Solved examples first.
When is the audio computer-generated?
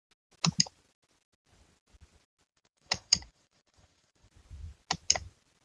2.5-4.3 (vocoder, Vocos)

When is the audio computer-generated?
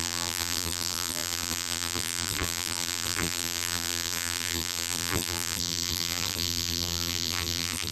0.0-7.9 (vocoder, BigVGAN v2)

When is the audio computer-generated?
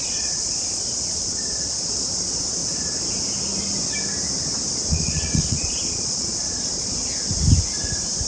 0.0-2.6 (vocoder, Vocos); 4.9-7.1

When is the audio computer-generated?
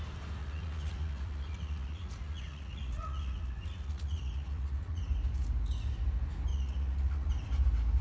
0.4-5.0 (vocoder, Vocos); 6.5-7.3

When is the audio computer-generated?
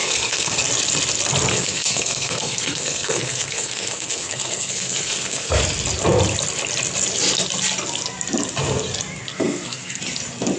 0.0-0.6 (codec, SNAC); 1.5-5.6; 9.3-10.0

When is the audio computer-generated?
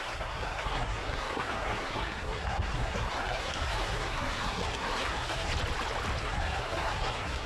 0.0-5.5 (codec, SNAC); 6.2-7.5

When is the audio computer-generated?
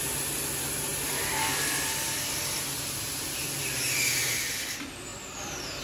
0.9-3.4 (vocoder, BigVGAN v2)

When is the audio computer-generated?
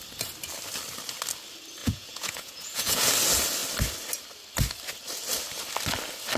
1.8-3.1 (vocoder, Vocos)